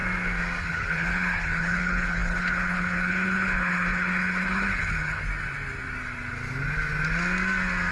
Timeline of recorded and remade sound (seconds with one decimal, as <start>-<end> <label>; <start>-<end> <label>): 0.0-0.6 recorded; 0.6-5.3 remade; 5.3-7.9 recorded